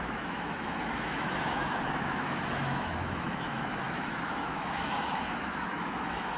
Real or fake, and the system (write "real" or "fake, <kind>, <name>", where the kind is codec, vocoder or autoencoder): fake, autoencoder, DAC-VAE